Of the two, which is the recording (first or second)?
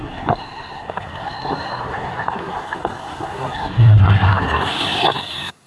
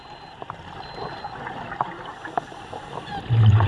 second